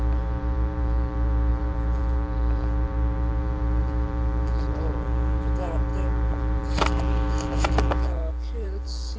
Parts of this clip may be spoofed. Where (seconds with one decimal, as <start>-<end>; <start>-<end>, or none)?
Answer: 0.0-9.2